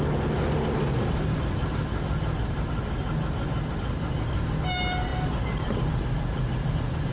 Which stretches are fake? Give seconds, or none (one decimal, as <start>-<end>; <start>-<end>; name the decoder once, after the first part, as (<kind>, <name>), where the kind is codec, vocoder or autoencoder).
none